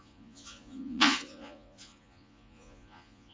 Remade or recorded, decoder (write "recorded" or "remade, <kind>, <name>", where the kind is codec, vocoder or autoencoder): remade, vocoder, Vocos